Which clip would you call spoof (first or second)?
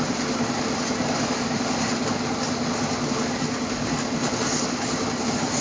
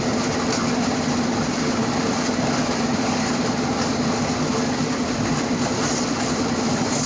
second